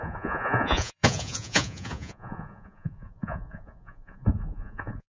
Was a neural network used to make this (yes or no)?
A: yes